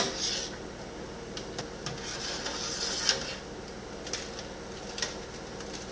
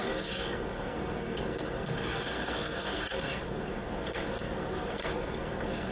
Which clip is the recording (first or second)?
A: first